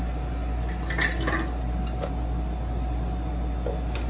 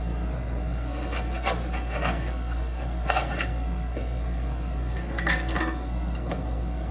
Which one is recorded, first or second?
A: first